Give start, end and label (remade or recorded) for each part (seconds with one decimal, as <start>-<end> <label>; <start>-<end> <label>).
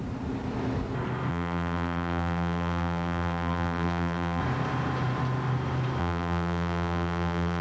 0.0-1.3 recorded; 1.3-4.4 remade; 4.4-6.0 recorded; 6.0-7.6 remade